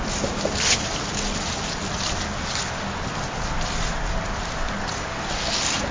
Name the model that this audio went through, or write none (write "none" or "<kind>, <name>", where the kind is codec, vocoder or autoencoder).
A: none